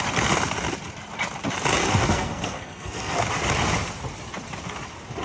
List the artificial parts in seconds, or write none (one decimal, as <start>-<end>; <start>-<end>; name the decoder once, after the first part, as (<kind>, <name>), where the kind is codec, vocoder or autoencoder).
1.8-3.2 (codec, SNAC)